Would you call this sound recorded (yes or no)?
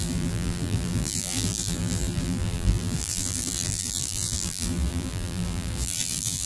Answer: no